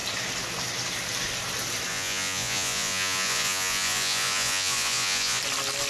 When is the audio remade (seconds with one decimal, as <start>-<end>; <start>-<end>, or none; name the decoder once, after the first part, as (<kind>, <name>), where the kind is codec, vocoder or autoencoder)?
1.9-5.4 (vocoder, Vocos)